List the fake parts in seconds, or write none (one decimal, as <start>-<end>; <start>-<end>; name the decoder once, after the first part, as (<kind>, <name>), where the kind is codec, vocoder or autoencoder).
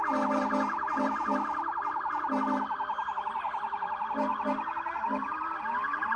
0.0-1.3 (vocoder, BigVGAN v2); 3.3-4.3; 5.0-6.2